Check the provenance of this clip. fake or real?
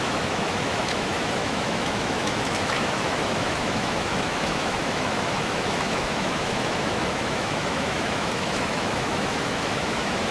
fake